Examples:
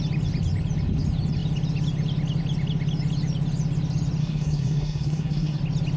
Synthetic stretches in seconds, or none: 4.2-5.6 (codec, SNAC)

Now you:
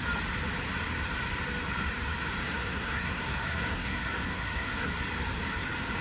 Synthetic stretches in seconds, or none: 2.4-4.9 (codec, SNAC)

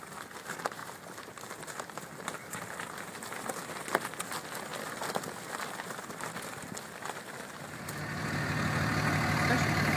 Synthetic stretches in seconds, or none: none

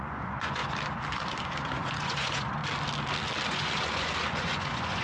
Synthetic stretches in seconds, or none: 0.0-0.6 (vocoder, Vocos); 1.4-2.6; 3.5-5.0

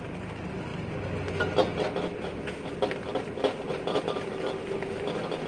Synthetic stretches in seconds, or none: none

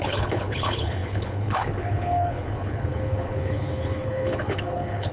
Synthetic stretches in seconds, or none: 0.0-5.1 (codec, HILCodec)

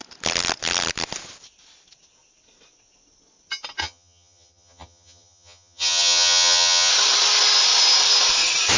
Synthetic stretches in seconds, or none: 3.8-6.9 (vocoder, HiFi-GAN)